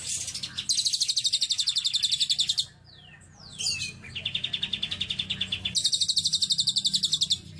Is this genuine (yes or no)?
yes